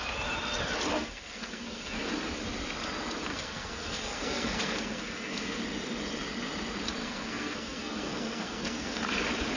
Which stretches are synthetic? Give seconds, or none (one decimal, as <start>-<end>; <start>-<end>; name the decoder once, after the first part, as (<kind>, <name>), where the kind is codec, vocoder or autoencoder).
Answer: 0.9-2.1 (codec, SNAC); 3.3-5.6; 7.0-9.0